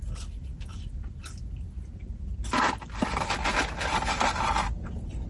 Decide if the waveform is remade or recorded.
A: recorded